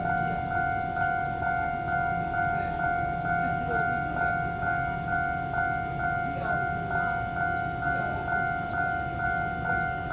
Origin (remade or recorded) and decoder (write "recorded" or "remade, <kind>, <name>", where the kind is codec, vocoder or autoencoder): recorded